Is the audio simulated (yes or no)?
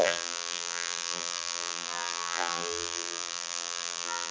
yes